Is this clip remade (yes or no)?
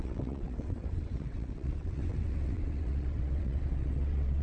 yes